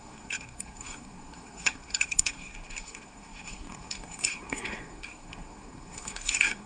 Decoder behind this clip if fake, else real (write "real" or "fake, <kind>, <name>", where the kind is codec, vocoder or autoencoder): fake, codec, SNAC